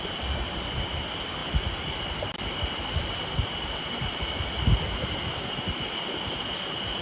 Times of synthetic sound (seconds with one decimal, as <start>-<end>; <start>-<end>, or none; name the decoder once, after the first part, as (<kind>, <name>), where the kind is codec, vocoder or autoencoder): none